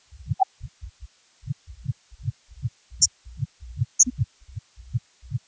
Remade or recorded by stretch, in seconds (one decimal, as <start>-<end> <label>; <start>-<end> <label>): 0.0-5.5 recorded